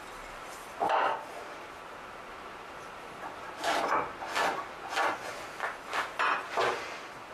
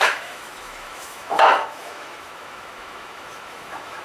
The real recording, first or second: first